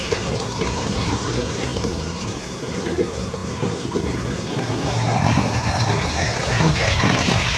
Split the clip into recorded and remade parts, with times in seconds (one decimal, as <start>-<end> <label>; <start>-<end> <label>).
0.0-7.6 remade